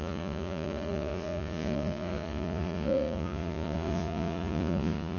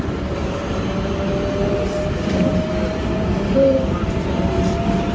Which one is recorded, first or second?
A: second